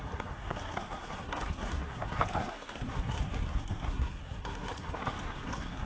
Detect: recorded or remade remade